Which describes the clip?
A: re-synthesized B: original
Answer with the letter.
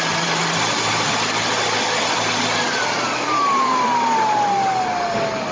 B